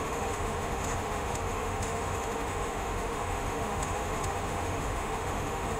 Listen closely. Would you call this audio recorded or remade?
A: remade